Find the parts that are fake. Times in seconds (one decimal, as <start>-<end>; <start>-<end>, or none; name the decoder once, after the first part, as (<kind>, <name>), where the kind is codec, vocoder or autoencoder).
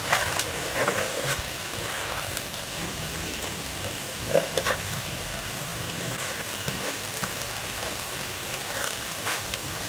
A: 0.0-9.9 (codec, DAC)